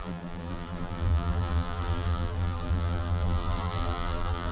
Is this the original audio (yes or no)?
no